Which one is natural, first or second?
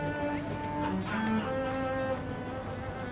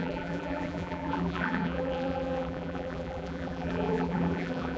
first